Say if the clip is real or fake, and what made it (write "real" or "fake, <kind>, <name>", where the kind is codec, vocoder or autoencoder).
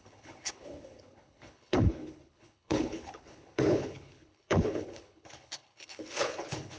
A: fake, codec, HILCodec